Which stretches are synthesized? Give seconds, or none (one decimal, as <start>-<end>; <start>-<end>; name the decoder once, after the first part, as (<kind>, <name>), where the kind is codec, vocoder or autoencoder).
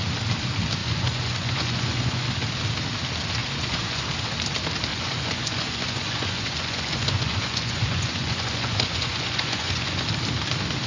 0.8-2.3 (vocoder, Vocos); 3.4-4.0; 4.9-10.0